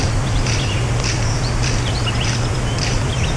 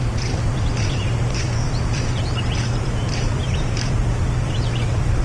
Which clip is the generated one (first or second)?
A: second